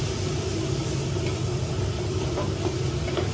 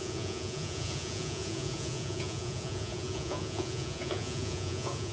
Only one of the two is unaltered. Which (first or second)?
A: first